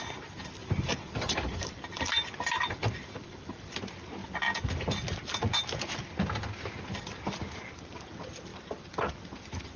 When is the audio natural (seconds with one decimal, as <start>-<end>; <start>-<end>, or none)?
0.0-0.6; 3.7-8.5; 9.1-9.8